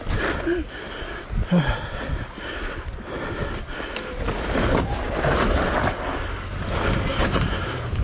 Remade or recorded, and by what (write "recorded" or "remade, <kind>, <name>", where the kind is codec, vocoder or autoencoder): recorded